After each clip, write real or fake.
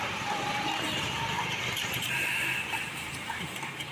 fake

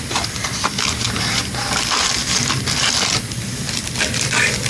real